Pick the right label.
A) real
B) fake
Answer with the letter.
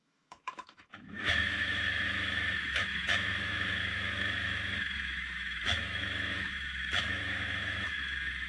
B